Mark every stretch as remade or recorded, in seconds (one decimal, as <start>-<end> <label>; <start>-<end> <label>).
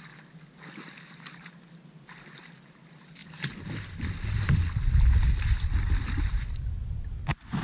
0.0-7.6 recorded